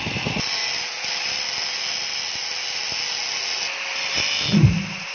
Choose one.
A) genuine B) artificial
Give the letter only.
A